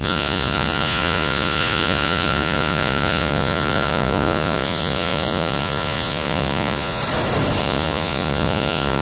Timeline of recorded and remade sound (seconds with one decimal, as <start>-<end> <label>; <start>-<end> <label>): 0.0-7.0 remade; 7.0-7.6 recorded; 7.6-9.0 remade